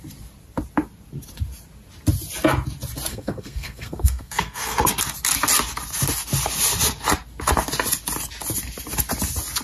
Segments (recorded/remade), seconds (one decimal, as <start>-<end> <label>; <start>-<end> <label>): 0.0-3.1 recorded; 3.1-4.9 remade; 4.9-9.6 recorded